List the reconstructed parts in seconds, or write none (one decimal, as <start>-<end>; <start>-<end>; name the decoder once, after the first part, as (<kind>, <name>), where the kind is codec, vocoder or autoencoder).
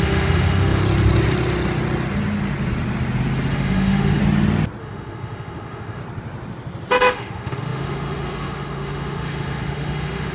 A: 0.0-0.8 (autoencoder, DAC-VAE); 3.5-4.2; 4.8-6.0; 6.9-10.3